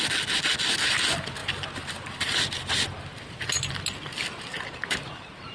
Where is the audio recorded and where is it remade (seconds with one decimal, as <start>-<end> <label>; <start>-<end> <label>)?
0.0-1.4 recorded; 1.4-3.7 remade; 3.7-4.5 recorded; 4.5-5.1 remade; 5.1-5.5 recorded